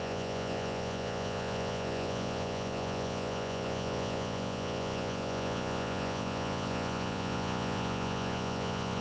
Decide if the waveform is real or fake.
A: fake